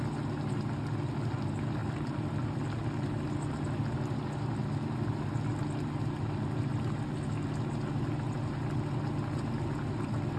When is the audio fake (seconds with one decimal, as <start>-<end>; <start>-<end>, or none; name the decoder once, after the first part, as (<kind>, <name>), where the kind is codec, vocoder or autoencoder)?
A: 1.8-2.6 (vocoder, BigVGAN v2)

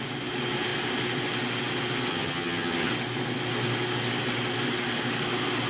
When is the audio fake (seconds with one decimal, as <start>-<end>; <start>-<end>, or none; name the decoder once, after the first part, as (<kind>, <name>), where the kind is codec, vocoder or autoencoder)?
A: 2.1-2.9 (vocoder, HiFi-GAN)

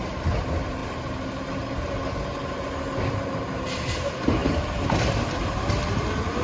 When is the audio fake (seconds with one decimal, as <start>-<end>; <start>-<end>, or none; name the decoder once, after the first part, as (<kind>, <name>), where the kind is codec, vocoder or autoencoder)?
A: none